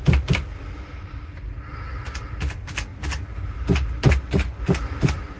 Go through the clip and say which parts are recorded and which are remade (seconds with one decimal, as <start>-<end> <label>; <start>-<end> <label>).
0.0-5.4 recorded